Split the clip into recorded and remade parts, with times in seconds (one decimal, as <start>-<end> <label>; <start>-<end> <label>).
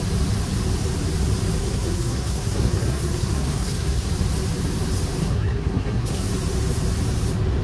0.0-1.6 recorded; 1.6-4.1 remade; 4.1-5.2 recorded; 5.2-6.3 remade; 6.3-7.6 recorded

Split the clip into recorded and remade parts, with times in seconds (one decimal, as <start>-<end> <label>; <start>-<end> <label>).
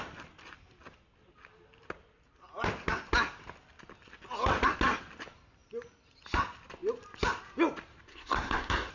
0.0-8.1 recorded; 8.1-8.9 remade